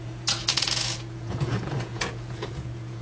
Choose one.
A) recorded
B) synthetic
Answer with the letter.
B